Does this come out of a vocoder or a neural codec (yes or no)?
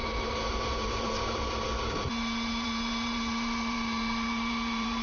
yes